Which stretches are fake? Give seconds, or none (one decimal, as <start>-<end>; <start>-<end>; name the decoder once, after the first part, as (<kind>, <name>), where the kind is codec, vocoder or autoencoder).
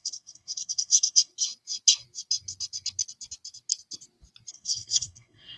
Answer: 0.0-1.3 (codec, SNAC); 4.5-5.6